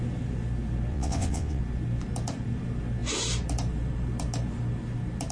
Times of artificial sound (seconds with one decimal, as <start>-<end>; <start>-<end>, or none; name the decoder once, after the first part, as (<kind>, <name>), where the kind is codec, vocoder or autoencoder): 0.9-1.6 (vocoder, WaveNeXt)

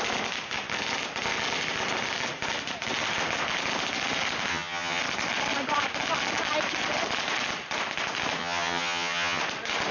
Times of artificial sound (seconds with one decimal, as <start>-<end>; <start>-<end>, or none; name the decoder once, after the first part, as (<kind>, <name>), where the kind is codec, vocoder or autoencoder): 4.5-5.0 (vocoder, HiFi-GAN); 8.4-9.4

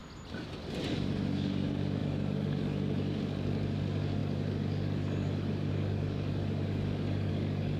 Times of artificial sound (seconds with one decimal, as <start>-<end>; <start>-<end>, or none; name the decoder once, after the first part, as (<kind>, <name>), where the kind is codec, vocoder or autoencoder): 0.9-7.8 (codec, DAC)